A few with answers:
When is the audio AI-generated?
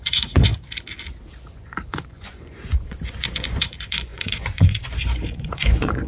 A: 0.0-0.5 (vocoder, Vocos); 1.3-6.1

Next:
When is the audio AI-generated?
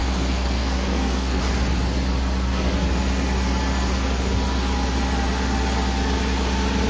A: 0.0-1.4 (codec, SNAC)